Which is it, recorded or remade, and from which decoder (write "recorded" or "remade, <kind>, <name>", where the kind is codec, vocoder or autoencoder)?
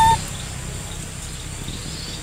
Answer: recorded